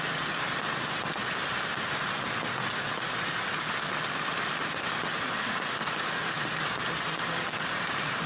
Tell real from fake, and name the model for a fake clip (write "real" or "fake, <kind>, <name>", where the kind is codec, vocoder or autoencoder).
real